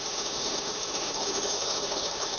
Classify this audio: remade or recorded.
remade